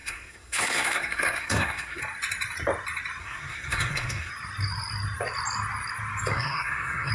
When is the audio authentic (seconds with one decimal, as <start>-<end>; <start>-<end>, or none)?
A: 2.0-3.2; 4.3-6.3